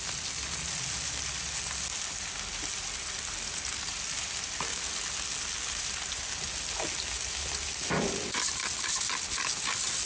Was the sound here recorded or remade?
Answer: recorded